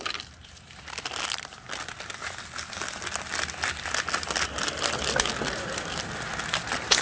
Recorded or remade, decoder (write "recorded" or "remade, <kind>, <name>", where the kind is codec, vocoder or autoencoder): recorded